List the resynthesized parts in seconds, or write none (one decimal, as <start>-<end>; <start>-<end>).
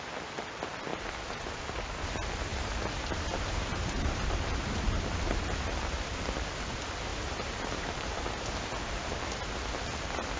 0.9-1.6; 2.5-4.9; 7.1-8.6